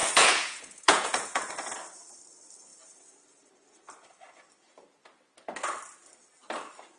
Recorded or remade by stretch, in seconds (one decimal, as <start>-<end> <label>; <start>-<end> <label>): 0.0-1.5 remade; 1.5-7.0 recorded